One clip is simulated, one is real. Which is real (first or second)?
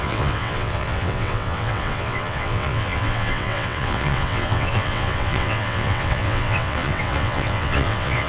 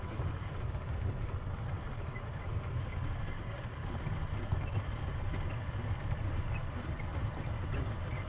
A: second